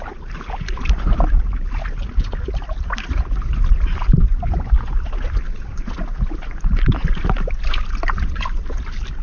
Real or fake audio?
real